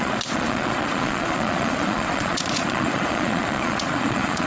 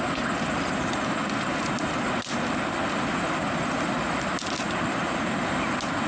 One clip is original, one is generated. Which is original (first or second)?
second